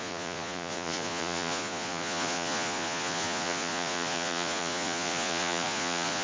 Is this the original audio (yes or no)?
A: no